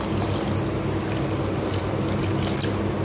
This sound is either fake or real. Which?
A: real